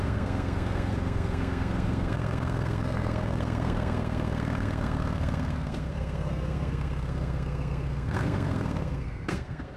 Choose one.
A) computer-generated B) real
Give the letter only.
A